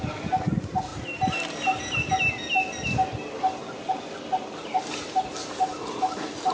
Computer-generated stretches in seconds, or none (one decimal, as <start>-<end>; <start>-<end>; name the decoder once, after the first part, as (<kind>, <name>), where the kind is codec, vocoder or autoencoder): none